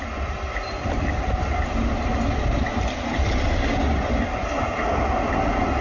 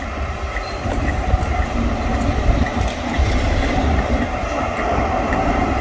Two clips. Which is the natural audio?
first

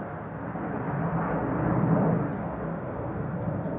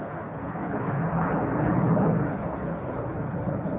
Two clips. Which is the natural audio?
first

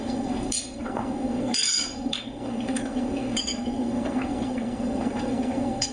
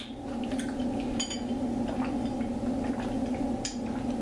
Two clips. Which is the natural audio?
second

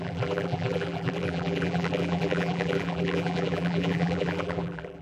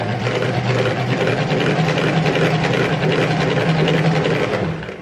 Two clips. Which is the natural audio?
second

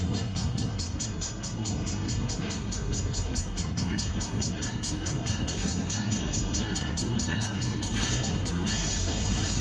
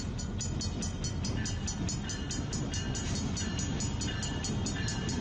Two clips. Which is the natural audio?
second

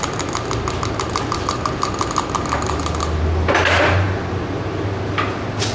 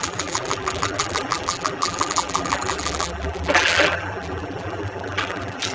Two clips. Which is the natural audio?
first